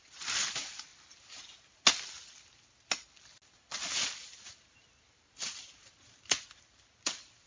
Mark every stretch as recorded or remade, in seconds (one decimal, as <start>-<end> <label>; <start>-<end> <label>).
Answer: 0.0-7.5 recorded